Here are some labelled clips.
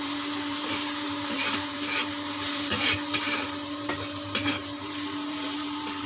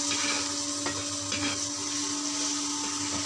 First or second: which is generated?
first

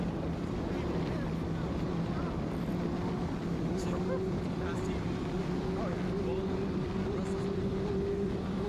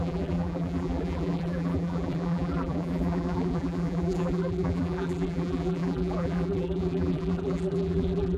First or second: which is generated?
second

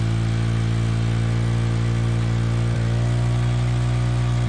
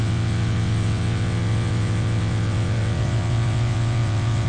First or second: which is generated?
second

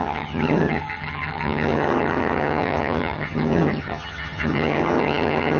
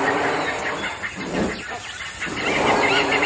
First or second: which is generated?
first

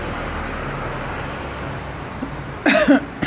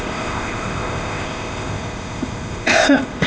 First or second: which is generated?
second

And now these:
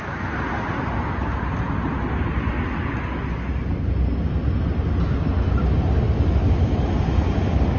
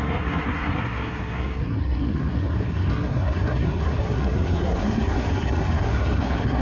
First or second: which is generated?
second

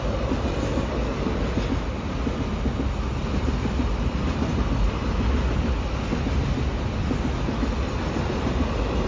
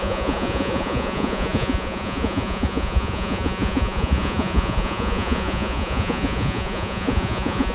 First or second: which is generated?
second